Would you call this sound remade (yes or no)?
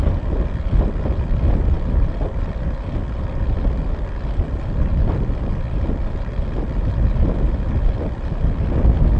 no